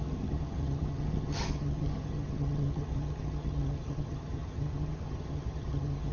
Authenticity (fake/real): fake